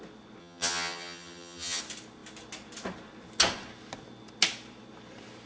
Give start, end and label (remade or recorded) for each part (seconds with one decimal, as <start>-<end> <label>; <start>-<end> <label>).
0.0-0.4 recorded; 0.4-1.8 remade; 1.8-5.5 recorded